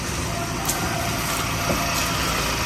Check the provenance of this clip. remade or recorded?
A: recorded